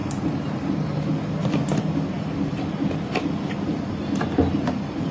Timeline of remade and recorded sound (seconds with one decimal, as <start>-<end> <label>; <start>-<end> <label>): 0.0-0.7 remade; 0.7-5.1 recorded